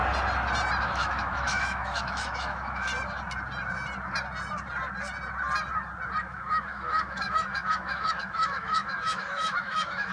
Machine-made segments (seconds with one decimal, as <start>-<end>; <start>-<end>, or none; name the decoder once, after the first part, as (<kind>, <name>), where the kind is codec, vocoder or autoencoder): 0.8-2.9 (autoencoder, DAC-VAE); 6.2-10.1